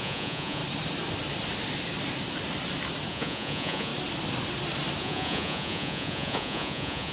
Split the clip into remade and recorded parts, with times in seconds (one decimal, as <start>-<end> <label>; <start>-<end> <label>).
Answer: 0.0-0.6 remade; 0.6-3.1 recorded; 3.1-3.9 remade; 3.9-5.0 recorded; 5.0-7.1 remade